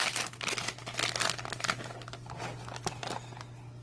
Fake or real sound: real